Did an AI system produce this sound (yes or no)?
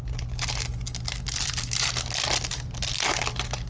no